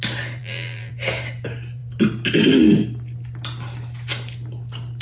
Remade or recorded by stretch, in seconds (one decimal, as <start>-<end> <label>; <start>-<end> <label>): 0.0-0.4 recorded; 0.4-0.9 remade; 0.9-5.0 recorded